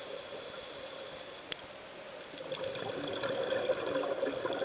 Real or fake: real